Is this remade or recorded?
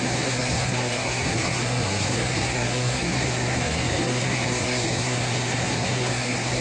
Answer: remade